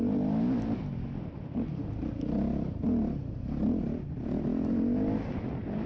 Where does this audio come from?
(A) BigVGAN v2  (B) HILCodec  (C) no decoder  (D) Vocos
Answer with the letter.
C